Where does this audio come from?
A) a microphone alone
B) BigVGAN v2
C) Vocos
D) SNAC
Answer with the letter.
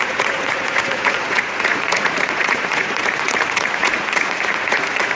C